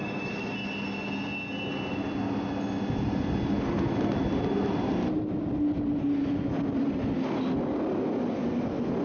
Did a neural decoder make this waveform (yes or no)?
no